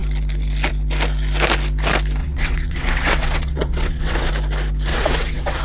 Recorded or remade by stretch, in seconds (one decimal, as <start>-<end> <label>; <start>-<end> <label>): 0.0-2.2 recorded; 2.2-4.3 remade; 4.3-4.9 recorded; 4.9-5.6 remade